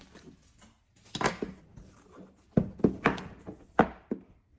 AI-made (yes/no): no